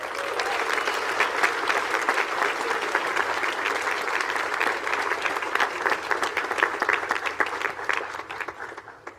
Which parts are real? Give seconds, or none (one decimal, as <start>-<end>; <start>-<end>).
0.0-2.1; 4.5-6.8; 8.0-9.2